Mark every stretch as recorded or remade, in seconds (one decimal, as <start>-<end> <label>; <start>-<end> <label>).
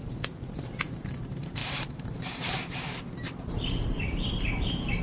0.0-5.0 remade